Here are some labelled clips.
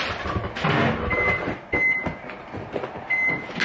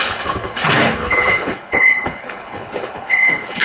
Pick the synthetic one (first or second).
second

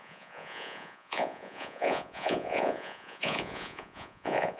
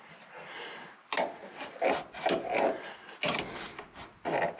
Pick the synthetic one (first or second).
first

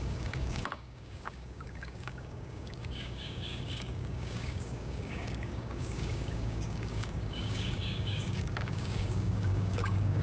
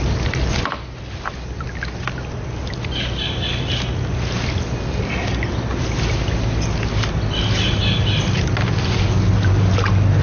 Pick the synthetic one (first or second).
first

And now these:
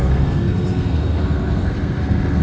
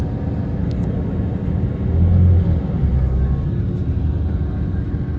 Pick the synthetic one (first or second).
first